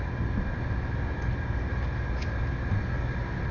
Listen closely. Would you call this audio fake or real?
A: real